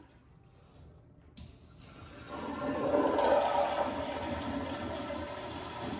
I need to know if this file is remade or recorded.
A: recorded